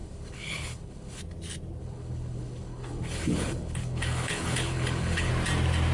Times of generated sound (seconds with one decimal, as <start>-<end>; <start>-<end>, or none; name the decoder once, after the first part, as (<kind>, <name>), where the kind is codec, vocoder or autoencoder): 0.0-1.2 (codec, HILCodec); 1.8-5.3